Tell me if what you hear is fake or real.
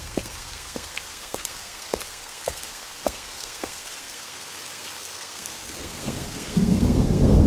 fake